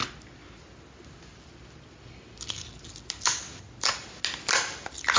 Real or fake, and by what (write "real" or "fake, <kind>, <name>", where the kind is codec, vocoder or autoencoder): real